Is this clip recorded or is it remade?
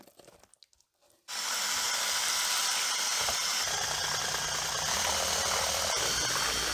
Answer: recorded